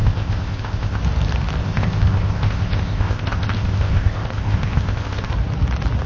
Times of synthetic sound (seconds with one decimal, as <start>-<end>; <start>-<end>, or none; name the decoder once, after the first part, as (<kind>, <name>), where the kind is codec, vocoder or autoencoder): 0.0-1.0 (codec, ZipCodec); 1.6-5.3